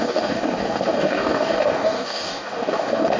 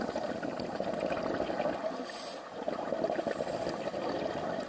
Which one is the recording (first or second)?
second